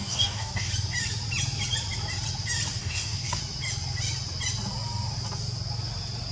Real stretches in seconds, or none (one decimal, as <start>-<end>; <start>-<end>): 0.7-2.8; 3.4-6.3